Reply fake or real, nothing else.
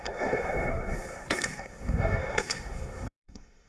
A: fake